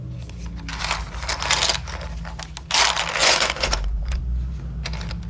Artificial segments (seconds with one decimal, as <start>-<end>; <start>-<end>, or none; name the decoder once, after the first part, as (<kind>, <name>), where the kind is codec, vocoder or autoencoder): 3.2-4.2 (vocoder, Vocos)